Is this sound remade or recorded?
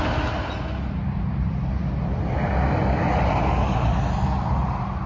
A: recorded